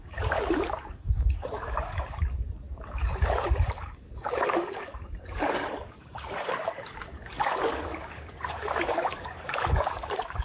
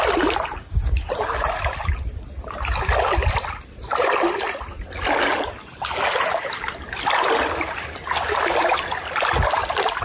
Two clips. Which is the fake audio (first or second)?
first